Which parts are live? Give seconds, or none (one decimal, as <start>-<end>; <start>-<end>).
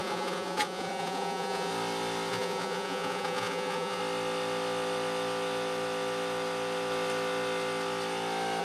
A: 1.7-2.3; 4.0-8.6